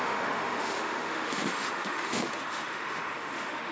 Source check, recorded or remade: remade